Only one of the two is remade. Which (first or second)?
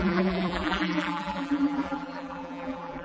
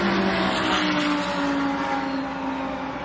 first